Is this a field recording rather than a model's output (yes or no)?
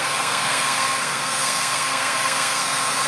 no